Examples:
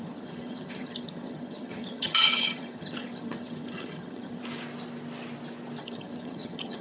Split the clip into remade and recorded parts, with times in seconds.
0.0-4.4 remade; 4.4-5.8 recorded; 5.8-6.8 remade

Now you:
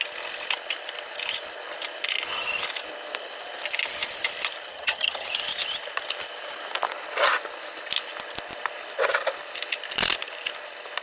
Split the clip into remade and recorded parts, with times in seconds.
0.0-4.7 recorded; 4.7-5.3 remade; 5.3-11.0 recorded

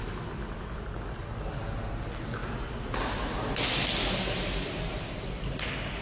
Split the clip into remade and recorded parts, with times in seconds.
0.0-6.0 recorded

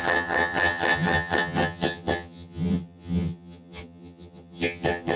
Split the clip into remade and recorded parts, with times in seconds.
0.0-5.2 remade